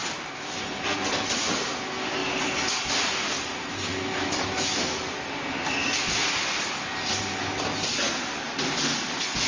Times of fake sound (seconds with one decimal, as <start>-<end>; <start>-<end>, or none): 3.9-4.8

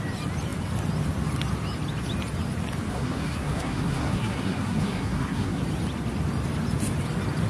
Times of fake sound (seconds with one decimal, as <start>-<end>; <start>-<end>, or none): 2.9-5.6

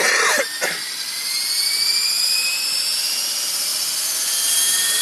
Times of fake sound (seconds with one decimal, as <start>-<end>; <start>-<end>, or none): 0.0-3.7; 4.5-5.0

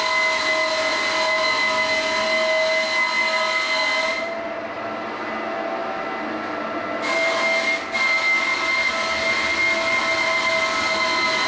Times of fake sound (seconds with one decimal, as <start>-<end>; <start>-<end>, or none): none